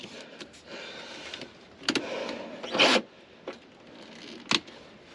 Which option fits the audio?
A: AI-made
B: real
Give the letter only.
B